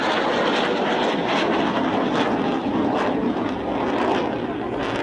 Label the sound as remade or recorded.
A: recorded